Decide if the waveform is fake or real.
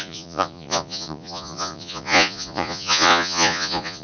fake